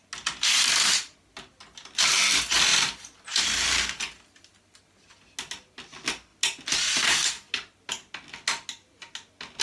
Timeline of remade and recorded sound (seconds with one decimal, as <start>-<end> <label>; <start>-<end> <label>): 0.0-2.7 recorded; 2.7-4.0 remade; 4.0-9.6 recorded

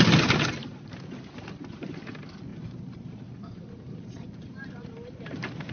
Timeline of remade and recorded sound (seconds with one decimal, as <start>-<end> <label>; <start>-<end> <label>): 0.0-0.6 recorded; 0.6-2.0 remade; 2.0-2.5 recorded; 2.5-5.7 remade

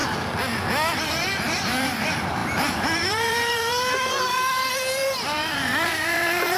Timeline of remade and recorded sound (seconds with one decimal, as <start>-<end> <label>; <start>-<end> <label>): 0.0-1.1 recorded; 1.1-6.6 remade

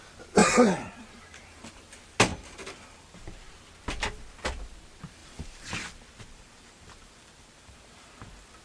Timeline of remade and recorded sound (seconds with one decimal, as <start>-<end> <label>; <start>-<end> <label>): 0.0-0.4 recorded; 0.4-1.8 remade; 1.8-2.3 recorded; 2.3-3.5 remade; 3.5-5.2 recorded; 5.2-8.1 remade; 8.1-8.6 recorded

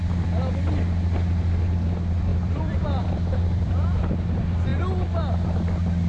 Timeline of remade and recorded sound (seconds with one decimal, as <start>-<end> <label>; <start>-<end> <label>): 0.0-2.3 recorded; 2.3-4.0 remade; 4.0-6.1 recorded

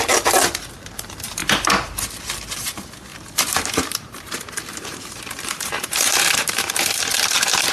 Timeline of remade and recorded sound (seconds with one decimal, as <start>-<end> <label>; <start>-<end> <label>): 0.0-1.4 recorded; 1.4-2.0 remade; 2.0-3.1 recorded; 3.1-6.7 remade; 6.7-7.7 recorded